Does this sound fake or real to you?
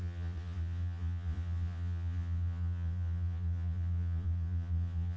fake